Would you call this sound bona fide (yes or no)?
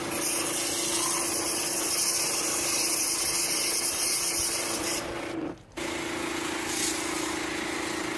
yes